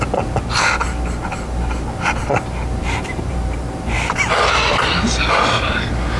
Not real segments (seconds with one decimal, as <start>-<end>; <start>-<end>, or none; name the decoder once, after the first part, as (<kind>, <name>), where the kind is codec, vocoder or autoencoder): 2.8-3.6 (vocoder, BigVGAN v2)